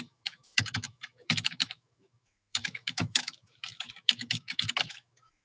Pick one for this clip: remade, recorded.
remade